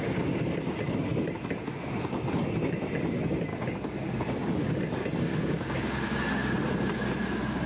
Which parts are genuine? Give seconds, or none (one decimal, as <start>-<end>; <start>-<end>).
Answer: 0.0-3.5; 4.8-5.3; 6.2-7.7